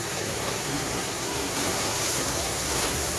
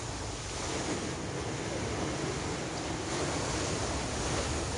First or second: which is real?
second